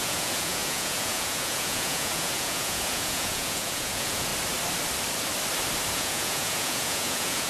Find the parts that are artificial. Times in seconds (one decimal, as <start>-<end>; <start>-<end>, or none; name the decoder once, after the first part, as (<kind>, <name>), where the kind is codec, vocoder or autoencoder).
0.0-4.3 (vocoder, Vocos); 5.9-7.5